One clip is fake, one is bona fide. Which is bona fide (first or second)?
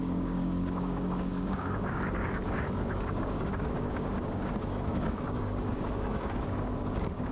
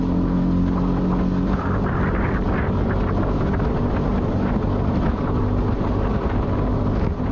second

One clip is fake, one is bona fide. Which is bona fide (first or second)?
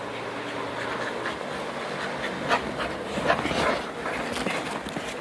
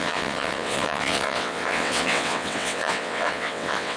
first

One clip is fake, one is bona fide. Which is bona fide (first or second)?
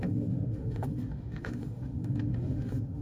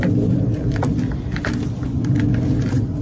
second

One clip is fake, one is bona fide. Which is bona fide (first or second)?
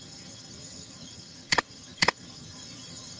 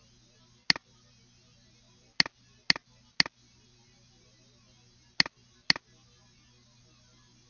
second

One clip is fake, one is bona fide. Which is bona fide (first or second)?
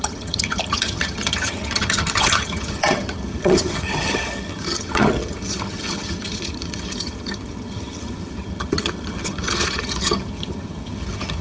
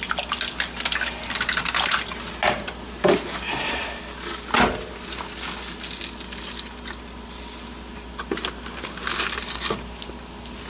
second